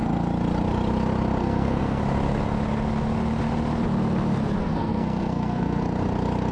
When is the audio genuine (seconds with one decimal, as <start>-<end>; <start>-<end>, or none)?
0.0-1.4; 2.0-4.6; 5.8-6.5